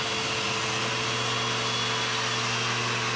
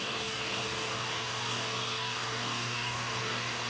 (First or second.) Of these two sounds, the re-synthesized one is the second